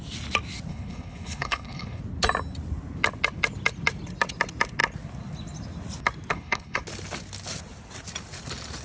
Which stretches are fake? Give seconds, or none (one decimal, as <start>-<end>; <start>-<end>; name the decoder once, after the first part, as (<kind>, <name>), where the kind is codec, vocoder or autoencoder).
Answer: 0.7-2.0 (codec, HILCodec); 6.3-6.8